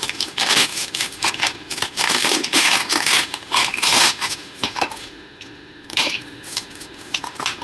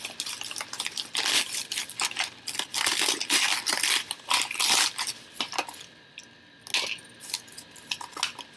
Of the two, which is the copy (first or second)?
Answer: first